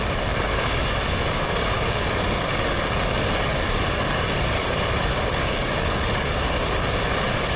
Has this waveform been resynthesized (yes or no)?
yes